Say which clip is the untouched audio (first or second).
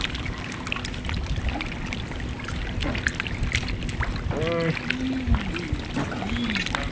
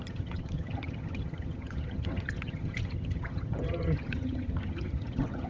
first